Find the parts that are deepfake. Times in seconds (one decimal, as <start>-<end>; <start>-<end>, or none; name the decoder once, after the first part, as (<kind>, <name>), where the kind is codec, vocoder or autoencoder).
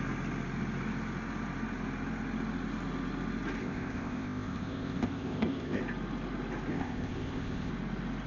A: 3.6-5.8 (codec, ZipCodec); 6.7-7.7